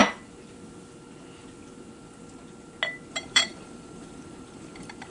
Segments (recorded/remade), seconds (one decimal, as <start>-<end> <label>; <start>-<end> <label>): 0.0-3.1 recorded; 3.1-5.1 remade